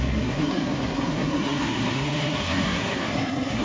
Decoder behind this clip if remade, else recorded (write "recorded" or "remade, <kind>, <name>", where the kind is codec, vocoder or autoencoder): remade, codec, SNAC